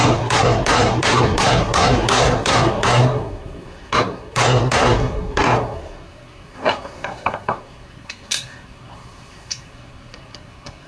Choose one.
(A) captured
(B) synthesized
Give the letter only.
B